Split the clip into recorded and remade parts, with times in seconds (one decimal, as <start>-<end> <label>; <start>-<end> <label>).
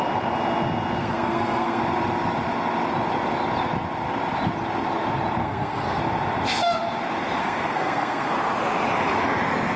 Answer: 0.0-1.0 recorded; 1.0-1.8 remade; 1.8-5.4 recorded; 5.4-6.0 remade; 6.0-7.4 recorded; 7.4-8.3 remade; 8.3-9.8 recorded